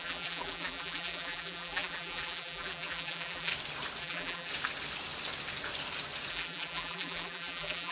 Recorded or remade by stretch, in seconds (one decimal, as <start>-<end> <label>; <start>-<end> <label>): 0.0-3.5 remade; 3.5-4.0 recorded; 4.0-4.5 remade; 4.5-6.3 recorded; 6.3-7.9 remade